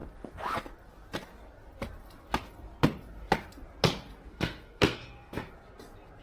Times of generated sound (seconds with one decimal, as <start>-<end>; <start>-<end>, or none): 4.3-5.5